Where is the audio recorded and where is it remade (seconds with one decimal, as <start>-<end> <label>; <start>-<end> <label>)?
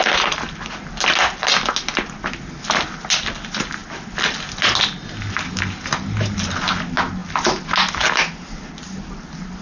0.0-9.6 recorded